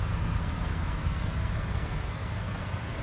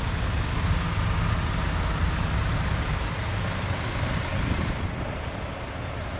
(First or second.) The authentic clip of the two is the second